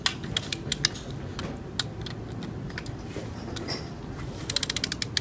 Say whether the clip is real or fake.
real